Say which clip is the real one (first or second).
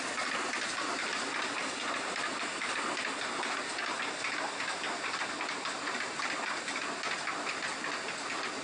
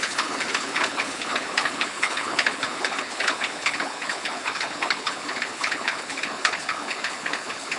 first